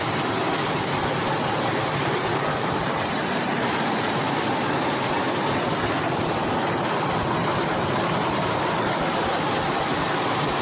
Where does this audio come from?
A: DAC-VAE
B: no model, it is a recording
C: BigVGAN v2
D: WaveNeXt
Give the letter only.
B